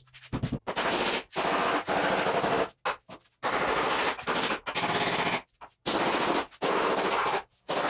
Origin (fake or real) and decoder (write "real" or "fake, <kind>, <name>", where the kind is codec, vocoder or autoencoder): real